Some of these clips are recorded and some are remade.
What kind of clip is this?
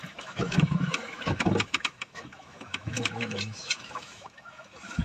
remade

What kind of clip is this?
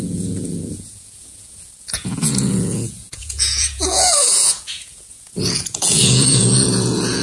remade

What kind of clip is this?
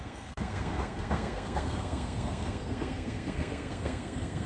remade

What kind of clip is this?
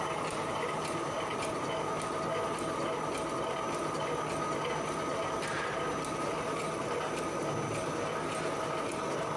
recorded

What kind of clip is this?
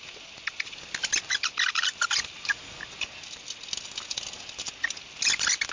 recorded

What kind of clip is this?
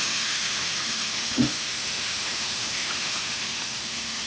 remade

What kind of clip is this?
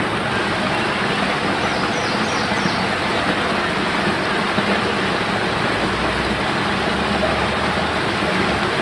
recorded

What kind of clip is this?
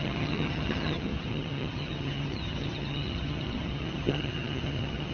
remade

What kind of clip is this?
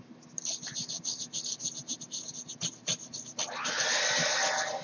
recorded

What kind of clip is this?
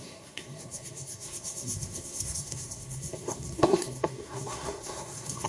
remade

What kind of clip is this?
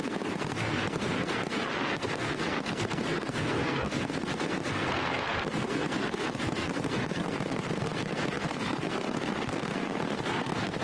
remade